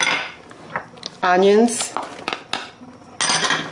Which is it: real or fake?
real